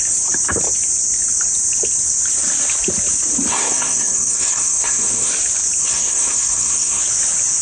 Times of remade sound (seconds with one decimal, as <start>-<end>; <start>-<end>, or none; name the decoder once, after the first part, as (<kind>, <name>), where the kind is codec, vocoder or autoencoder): 3.5-5.3 (codec, SNAC); 5.8-7.0